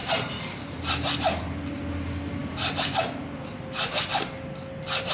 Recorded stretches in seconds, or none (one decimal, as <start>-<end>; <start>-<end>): 0.0-2.4; 3.0-5.1